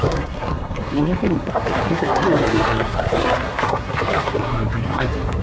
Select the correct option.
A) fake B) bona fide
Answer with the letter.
A